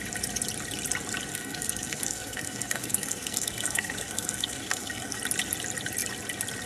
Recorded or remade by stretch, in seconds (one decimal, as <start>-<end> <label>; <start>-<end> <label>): 0.0-1.3 recorded; 1.3-5.2 remade; 5.2-6.7 recorded